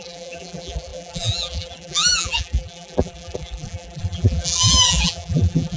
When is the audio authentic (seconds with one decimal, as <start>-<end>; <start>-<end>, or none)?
none